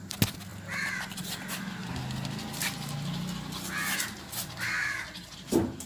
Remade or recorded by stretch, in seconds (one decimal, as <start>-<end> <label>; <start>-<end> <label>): 0.0-5.9 recorded